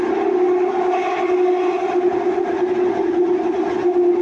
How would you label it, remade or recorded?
recorded